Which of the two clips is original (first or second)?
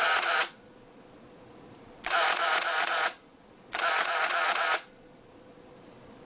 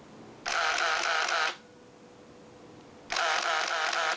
second